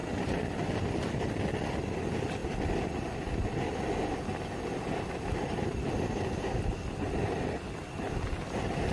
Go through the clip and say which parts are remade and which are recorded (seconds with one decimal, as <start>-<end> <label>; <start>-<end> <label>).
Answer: 0.0-1.3 remade; 1.3-2.4 recorded; 2.4-3.2 remade; 3.2-8.9 recorded